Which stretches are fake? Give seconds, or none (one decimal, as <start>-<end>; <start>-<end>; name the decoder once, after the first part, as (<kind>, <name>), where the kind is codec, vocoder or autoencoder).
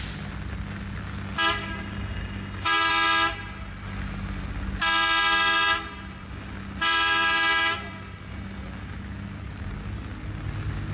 1.6-2.9 (codec, DAC)